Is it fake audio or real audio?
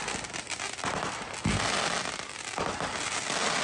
real